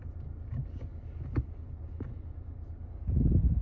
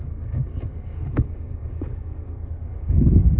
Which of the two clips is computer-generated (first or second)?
second